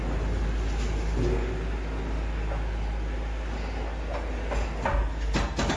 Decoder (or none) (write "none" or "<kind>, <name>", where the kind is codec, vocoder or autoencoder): none